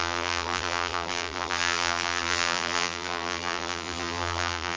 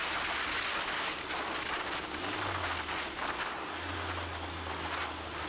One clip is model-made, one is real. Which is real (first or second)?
second